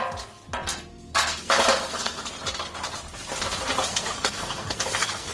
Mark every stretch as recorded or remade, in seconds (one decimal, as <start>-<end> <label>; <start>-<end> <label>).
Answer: 0.0-0.9 recorded; 0.9-2.3 remade; 2.3-3.9 recorded; 3.9-5.3 remade